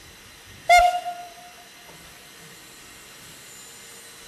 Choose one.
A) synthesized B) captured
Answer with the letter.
B